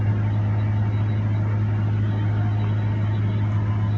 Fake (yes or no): no